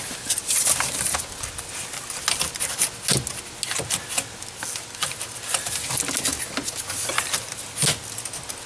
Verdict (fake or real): real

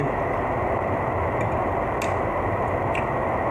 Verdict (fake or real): real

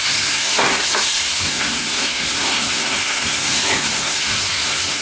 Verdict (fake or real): fake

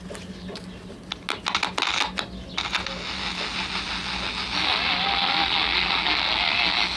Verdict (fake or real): real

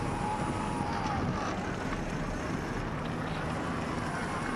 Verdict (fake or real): real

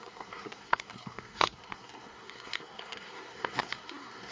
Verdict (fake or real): fake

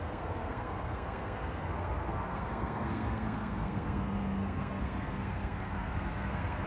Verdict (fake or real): fake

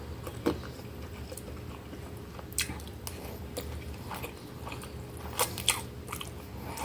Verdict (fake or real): real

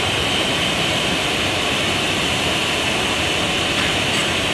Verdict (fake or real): real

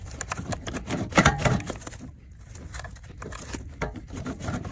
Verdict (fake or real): real